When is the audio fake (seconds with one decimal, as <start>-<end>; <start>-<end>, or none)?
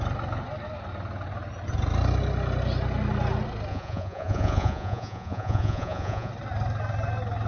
3.7-6.3